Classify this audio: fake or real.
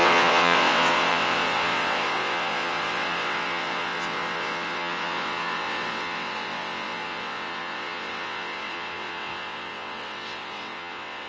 fake